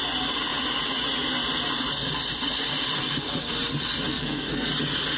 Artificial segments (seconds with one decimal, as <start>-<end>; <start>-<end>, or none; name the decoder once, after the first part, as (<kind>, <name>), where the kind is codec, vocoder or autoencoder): 4.1-4.7 (codec, SNAC)